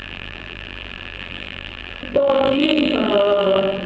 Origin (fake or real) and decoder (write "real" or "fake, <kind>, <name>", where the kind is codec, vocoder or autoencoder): fake, vocoder, BigVGAN v2